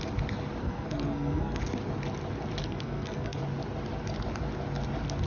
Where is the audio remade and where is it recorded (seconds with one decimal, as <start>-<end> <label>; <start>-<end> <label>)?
0.0-0.6 recorded; 0.6-1.6 remade; 1.6-2.6 recorded; 2.6-3.4 remade; 3.4-5.3 recorded